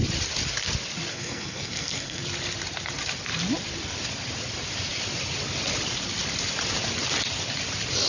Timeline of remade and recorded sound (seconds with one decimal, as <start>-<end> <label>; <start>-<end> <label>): 0.0-1.1 recorded; 1.1-2.2 remade; 2.2-8.1 recorded